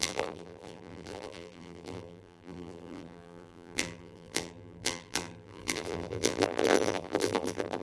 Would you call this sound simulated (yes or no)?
yes